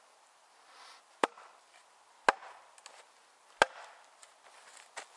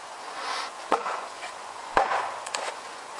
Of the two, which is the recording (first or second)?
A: first